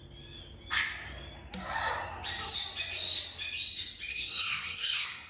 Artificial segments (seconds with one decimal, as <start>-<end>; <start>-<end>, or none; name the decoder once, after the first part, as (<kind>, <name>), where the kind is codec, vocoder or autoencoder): 4.1-5.3 (codec, SNAC)